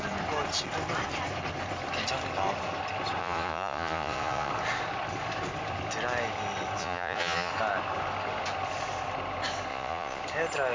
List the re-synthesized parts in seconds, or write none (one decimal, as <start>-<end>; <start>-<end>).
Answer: 3.2-4.5; 6.8-7.5; 9.7-10.2